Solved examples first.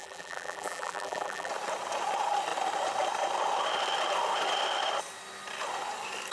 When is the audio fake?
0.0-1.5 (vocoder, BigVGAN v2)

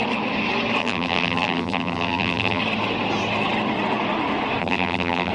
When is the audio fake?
0.8-2.6 (vocoder, BigVGAN v2); 4.6-5.3

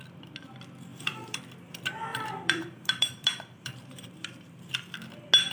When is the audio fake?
0.9-1.4 (vocoder, BigVGAN v2); 2.1-4.7